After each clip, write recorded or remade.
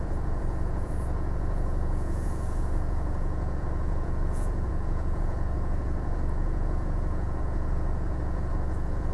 remade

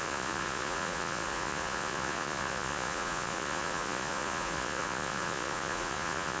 remade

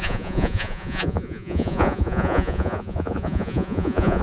remade